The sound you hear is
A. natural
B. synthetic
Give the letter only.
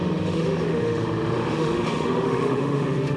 B